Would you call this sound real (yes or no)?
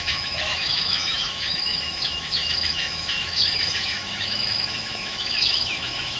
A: no